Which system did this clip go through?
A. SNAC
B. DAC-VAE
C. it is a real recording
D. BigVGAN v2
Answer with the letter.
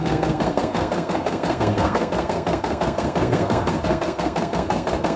A